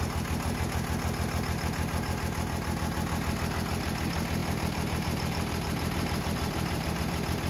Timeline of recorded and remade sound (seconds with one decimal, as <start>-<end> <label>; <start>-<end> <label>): 0.0-4.4 recorded; 4.4-7.0 remade; 7.0-7.5 recorded